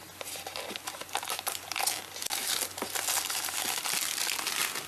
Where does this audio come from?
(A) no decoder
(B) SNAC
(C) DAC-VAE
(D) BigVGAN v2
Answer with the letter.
A